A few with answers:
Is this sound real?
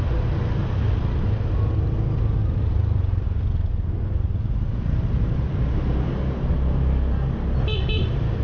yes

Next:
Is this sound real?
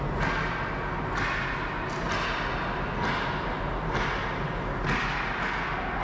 yes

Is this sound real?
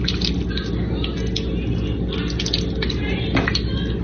yes